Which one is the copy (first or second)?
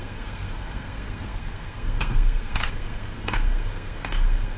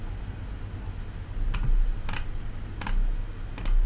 first